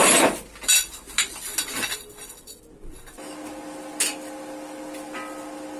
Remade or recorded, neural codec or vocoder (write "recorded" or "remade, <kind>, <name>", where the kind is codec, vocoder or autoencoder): recorded